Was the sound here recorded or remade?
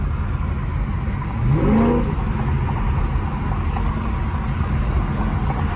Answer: recorded